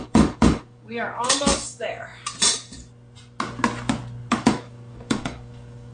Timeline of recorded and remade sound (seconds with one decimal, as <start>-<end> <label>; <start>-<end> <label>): 0.0-2.1 remade; 2.1-4.3 recorded; 4.3-5.9 remade